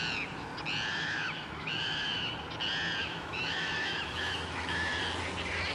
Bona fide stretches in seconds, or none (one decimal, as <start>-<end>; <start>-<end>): 0.0-0.9; 2.3-3.0; 5.0-5.7

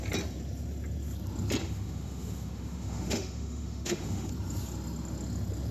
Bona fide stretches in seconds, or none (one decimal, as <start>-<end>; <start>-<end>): 0.0-1.6; 4.3-5.7

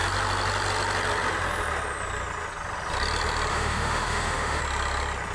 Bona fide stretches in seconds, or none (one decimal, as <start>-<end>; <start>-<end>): 0.0-3.5; 4.6-5.3

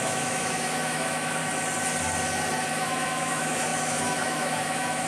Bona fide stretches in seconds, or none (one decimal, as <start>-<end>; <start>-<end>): 1.4-2.7

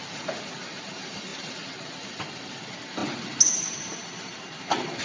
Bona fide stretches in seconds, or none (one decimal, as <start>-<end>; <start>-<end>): 0.0-5.0